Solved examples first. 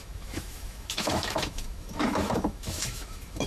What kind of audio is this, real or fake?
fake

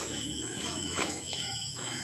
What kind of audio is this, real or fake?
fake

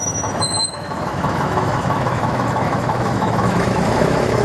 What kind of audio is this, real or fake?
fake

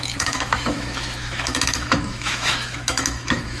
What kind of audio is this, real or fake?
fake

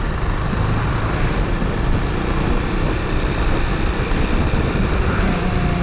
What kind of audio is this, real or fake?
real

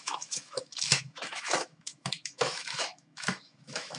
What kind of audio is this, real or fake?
fake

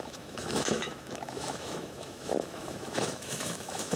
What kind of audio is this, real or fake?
fake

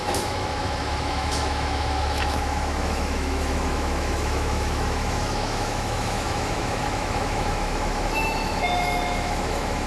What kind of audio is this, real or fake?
fake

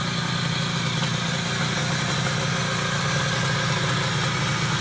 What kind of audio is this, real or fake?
real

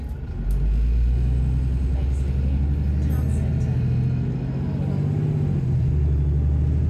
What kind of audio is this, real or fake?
real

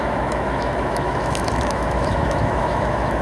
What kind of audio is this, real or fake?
fake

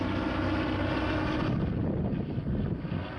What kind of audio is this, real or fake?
real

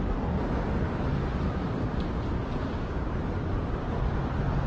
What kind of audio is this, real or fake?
real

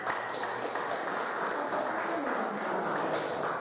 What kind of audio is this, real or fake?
real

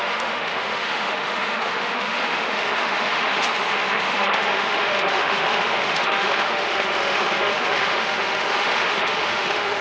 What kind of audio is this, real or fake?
fake